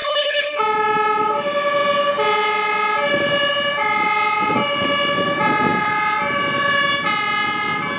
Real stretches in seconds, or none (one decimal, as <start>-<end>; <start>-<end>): 0.6-8.0